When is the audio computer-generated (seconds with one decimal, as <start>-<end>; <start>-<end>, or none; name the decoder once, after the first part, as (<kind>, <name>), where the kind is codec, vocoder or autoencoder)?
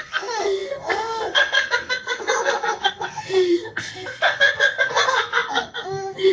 0.0-6.3 (codec, SNAC)